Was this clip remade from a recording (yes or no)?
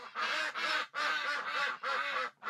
no